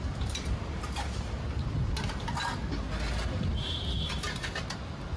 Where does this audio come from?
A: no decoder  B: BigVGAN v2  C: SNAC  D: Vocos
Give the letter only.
A